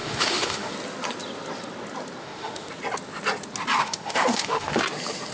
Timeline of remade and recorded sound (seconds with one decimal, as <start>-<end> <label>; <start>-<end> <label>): 0.0-0.7 remade; 0.7-2.2 recorded; 2.2-2.7 remade; 2.7-3.8 recorded; 3.8-4.8 remade; 4.8-5.3 recorded